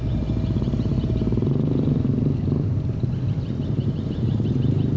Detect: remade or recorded recorded